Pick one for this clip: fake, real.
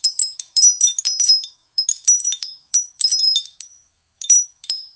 fake